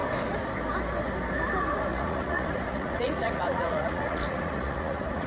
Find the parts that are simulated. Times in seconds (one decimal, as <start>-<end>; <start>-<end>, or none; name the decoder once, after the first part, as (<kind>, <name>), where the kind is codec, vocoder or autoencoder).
1.9-5.3 (vocoder, Vocos)